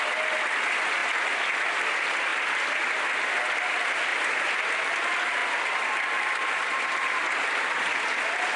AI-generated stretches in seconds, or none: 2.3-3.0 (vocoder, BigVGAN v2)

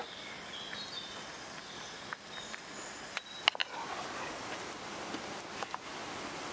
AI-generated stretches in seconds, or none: none

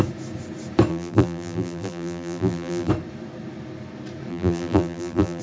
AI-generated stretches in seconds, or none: 0.9-2.9 (vocoder, BigVGAN v2); 4.3-5.4

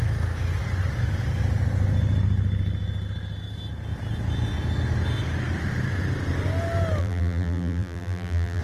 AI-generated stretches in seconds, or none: 7.0-8.6 (vocoder, BigVGAN v2)

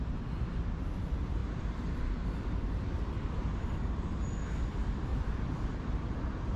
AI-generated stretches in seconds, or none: 1.4-2.2 (vocoder, BigVGAN v2); 5.1-6.6

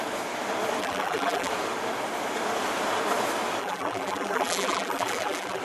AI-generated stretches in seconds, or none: 0.8-1.5 (vocoder, BigVGAN v2); 3.6-5.6

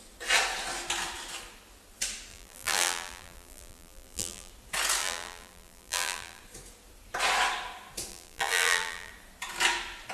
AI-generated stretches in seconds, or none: 2.3-4.5 (vocoder, BigVGAN v2); 5.0-6.4; 8.1-9.1

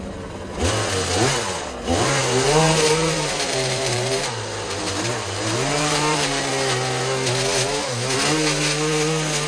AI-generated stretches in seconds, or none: 2.2-6.5 (vocoder, BigVGAN v2)